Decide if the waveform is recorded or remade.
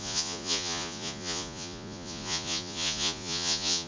remade